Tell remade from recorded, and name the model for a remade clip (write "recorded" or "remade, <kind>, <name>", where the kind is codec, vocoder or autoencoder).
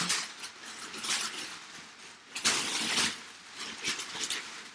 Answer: recorded